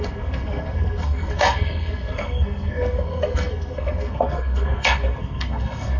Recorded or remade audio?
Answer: remade